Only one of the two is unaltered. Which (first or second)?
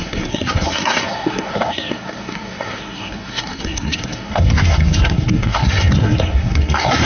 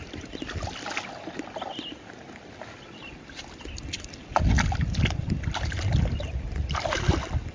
second